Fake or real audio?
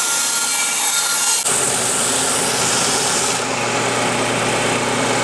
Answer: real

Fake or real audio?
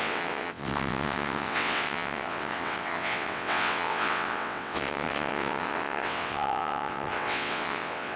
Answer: fake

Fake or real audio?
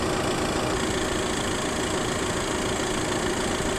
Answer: real